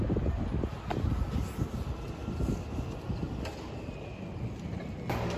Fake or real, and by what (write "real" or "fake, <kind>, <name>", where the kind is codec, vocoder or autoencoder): real